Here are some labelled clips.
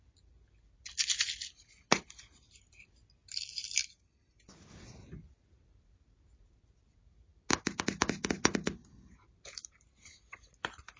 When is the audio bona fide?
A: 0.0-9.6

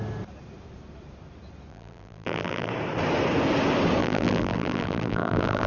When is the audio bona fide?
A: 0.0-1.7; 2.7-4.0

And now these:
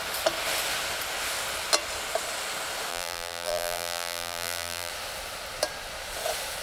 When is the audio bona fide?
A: 0.0-2.9; 4.9-6.6